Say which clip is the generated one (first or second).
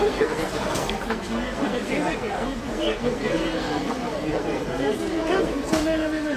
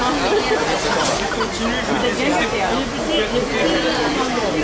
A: first